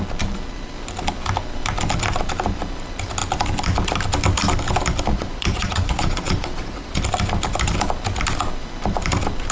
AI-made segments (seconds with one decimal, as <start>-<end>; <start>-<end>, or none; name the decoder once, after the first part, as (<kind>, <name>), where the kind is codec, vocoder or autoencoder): 5.1-7.0 (vocoder, Vocos)